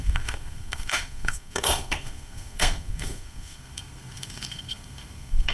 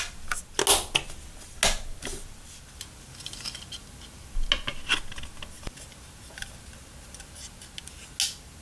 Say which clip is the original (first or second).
second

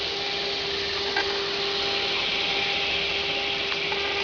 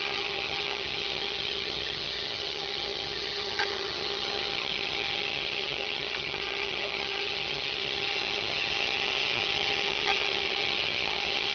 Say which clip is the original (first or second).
first